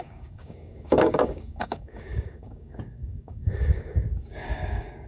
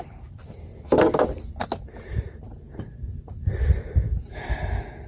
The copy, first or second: first